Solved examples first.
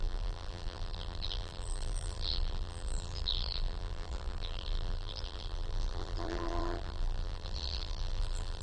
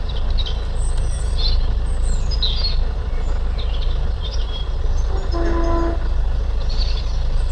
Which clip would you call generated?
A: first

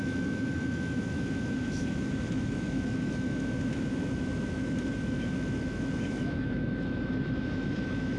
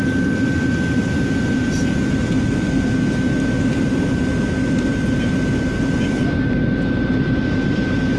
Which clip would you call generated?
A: first